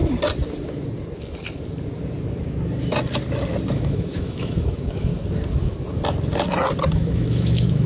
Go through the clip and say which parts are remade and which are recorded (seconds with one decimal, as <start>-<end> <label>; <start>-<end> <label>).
0.0-3.7 recorded; 3.7-5.1 remade; 5.1-6.9 recorded; 6.9-7.9 remade